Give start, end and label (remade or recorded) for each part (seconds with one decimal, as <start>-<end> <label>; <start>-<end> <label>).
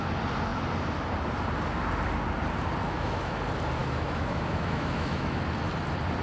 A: 0.0-2.8 recorded; 2.8-3.4 remade; 3.4-3.8 recorded; 3.8-5.4 remade; 5.4-6.2 recorded